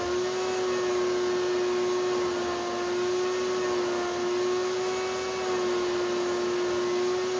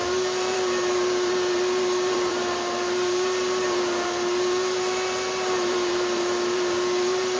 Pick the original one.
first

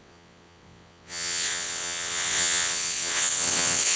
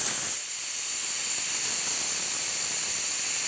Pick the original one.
second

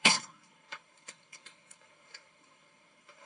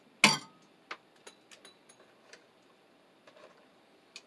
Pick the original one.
second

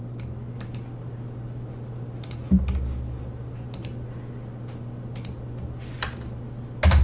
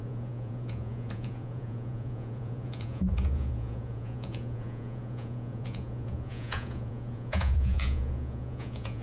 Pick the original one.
first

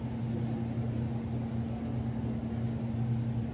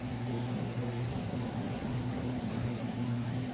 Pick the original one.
first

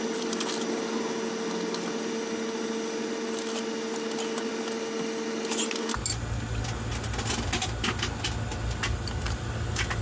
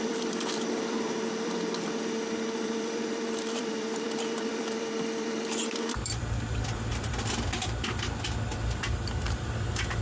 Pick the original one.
first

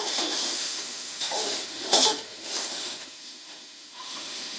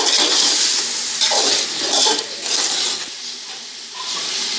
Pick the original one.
second